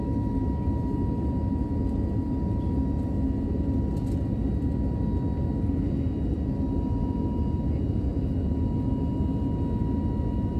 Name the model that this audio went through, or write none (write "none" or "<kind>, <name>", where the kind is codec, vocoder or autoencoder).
none